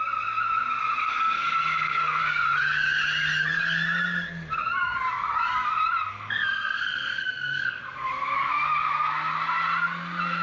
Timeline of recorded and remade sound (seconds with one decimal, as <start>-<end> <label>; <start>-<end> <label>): 0.0-1.0 recorded; 1.0-2.2 remade; 2.2-6.1 recorded; 6.1-8.1 remade; 8.1-10.4 recorded